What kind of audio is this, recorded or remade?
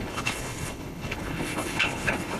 remade